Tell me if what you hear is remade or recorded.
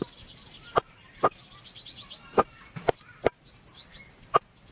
recorded